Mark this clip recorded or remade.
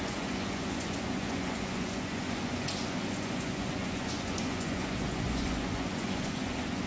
remade